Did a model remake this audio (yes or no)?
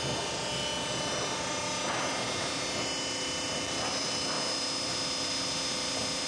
no